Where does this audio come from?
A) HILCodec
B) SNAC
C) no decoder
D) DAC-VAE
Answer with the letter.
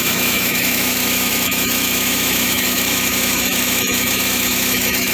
D